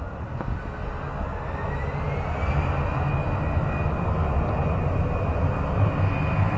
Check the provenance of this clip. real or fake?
real